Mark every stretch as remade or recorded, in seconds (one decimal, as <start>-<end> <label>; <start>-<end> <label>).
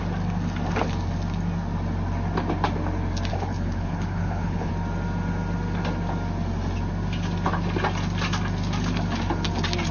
0.0-3.3 recorded; 3.3-4.7 remade; 4.7-9.9 recorded